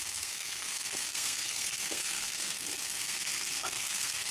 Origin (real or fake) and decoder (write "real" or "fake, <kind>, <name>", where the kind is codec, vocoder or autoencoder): fake, codec, SNAC